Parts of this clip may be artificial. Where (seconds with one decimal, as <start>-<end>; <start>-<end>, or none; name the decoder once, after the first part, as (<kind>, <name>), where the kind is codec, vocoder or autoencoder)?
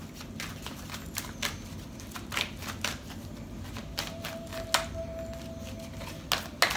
none